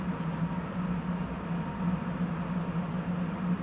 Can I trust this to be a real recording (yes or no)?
yes